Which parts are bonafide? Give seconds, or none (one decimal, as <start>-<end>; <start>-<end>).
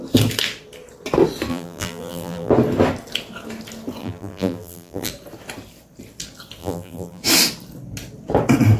0.0-1.5; 2.5-4.0; 5.1-6.6; 7.2-8.8